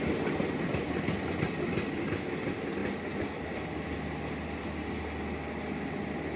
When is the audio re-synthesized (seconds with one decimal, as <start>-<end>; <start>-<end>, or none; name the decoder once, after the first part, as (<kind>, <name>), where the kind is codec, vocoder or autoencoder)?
none